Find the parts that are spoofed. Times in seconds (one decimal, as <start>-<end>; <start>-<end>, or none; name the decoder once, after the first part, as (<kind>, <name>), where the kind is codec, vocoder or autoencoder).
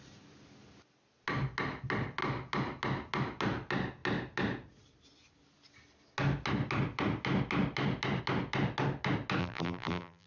9.4-10.3 (vocoder, BigVGAN v2)